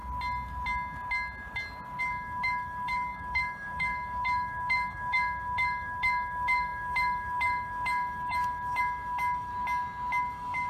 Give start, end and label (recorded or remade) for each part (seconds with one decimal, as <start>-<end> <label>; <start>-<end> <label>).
0.0-2.0 recorded; 2.0-9.5 remade; 9.5-10.2 recorded; 10.2-10.7 remade